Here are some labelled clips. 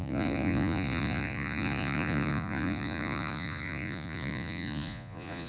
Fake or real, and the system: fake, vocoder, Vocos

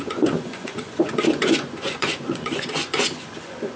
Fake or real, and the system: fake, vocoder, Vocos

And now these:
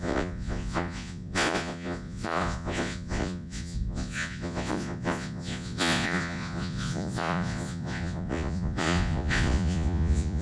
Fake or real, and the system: fake, vocoder, Vocos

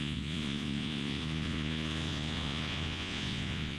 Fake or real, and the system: fake, vocoder, Vocos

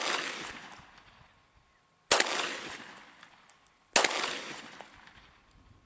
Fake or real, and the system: real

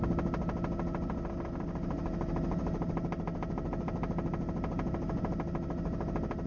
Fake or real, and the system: real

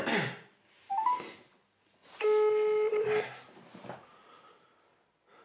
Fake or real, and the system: real